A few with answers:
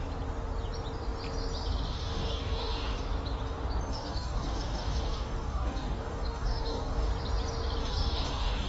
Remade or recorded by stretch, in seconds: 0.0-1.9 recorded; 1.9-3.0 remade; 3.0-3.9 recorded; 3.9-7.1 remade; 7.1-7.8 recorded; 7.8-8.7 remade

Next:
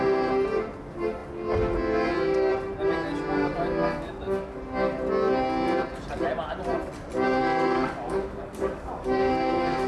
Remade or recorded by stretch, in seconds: 0.0-3.8 recorded; 3.8-4.6 remade; 4.6-7.4 recorded; 7.4-9.9 remade

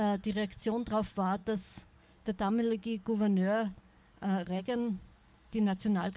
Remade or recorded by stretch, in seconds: 0.0-1.4 recorded; 1.4-4.6 remade; 4.6-5.3 recorded; 5.3-5.8 remade; 5.8-6.2 recorded

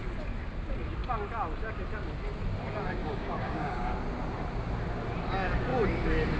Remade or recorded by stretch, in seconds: 0.0-3.0 recorded; 3.0-3.9 remade; 3.9-6.4 recorded